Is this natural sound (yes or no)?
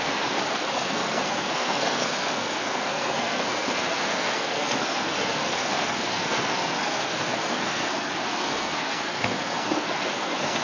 no